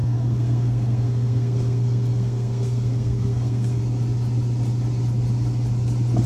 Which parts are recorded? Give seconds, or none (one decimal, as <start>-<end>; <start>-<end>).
3.8-6.3